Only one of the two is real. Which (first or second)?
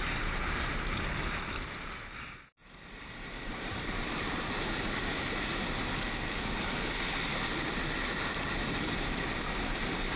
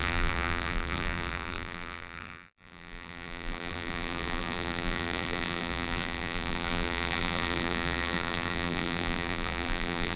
first